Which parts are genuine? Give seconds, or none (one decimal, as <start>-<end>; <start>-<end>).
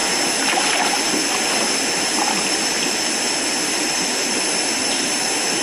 0.0-5.6